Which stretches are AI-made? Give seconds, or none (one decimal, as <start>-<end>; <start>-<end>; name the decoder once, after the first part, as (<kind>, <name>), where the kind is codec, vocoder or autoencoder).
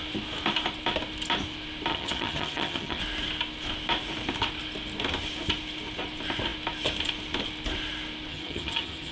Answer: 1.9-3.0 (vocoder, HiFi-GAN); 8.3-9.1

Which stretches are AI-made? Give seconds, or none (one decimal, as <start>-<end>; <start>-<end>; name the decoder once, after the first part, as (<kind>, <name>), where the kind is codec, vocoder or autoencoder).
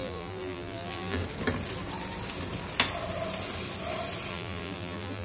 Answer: 0.0-1.2 (vocoder, BigVGAN v2); 4.3-5.2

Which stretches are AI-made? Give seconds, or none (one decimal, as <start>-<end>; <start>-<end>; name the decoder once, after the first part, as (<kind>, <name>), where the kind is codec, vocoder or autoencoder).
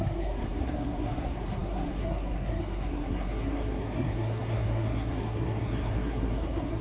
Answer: 0.0-6.8 (codec, SNAC)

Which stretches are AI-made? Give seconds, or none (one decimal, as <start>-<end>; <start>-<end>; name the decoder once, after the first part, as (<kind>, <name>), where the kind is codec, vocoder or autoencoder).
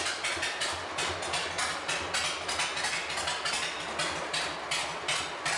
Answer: none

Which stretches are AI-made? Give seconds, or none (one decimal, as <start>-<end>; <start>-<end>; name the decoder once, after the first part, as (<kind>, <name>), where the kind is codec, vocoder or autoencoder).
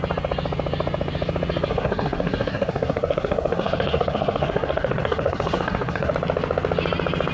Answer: 1.7-6.1 (codec, SNAC)